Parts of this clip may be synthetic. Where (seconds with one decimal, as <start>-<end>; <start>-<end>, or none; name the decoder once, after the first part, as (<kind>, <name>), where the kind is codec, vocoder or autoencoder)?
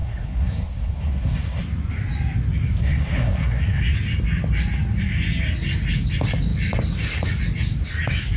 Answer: 0.0-1.6 (codec, SNAC); 2.8-3.8